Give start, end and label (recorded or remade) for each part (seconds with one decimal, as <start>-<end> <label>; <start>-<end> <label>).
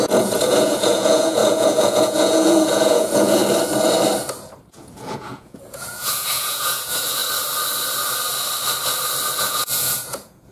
0.0-3.4 remade; 3.4-4.7 recorded; 4.7-7.2 remade; 7.2-9.4 recorded; 9.4-10.5 remade